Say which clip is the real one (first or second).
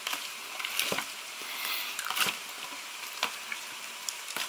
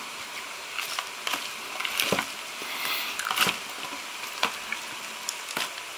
second